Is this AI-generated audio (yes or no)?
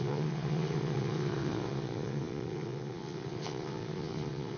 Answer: yes